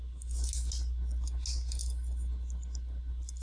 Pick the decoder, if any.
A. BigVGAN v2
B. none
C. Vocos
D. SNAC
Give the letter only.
B